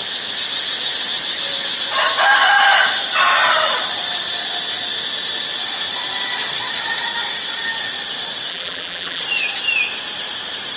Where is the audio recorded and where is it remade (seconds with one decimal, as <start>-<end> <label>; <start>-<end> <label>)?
0.0-8.5 recorded; 8.5-9.2 remade; 9.2-10.8 recorded